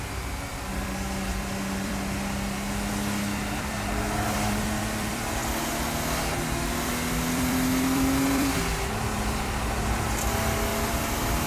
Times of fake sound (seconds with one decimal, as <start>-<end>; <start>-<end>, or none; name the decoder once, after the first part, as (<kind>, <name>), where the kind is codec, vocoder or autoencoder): 0.0-5.4 (vocoder, BigVGAN v2); 6.3-11.5